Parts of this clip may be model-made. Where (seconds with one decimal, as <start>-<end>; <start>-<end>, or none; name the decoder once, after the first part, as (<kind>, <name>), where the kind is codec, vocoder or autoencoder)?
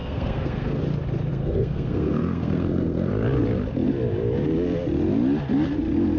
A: 0.0-0.8 (codec, SNAC); 1.3-3.1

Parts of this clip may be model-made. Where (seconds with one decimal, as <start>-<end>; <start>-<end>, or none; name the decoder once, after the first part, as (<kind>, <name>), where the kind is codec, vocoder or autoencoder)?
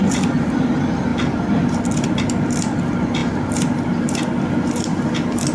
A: 1.1-2.6 (vocoder, BigVGAN v2); 3.2-5.1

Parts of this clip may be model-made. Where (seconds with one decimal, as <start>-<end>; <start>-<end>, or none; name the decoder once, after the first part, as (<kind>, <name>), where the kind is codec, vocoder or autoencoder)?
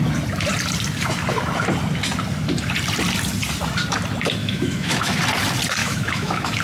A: 4.4-5.2 (autoencoder, DAC-VAE); 5.8-6.6